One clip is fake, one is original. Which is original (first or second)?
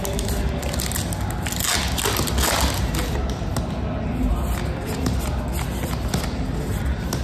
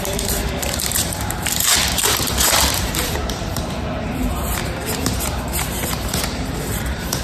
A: first